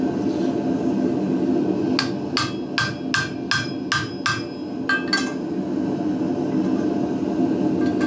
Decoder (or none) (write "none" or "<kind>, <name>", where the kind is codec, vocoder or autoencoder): none